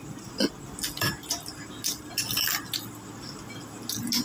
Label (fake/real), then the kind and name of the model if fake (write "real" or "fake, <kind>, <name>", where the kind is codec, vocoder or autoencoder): real